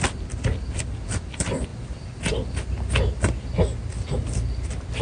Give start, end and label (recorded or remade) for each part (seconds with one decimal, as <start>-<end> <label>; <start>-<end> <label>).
0.0-5.0 recorded